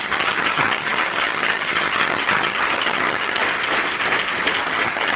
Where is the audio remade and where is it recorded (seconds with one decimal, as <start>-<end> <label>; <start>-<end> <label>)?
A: 0.0-3.4 remade; 3.4-4.7 recorded; 4.7-5.2 remade